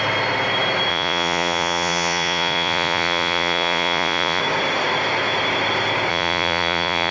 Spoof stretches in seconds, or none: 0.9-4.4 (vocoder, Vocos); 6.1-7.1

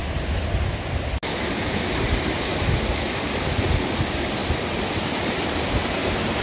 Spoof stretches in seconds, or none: none